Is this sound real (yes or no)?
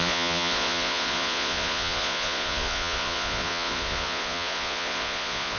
no